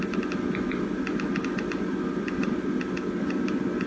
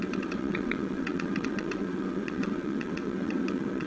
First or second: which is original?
first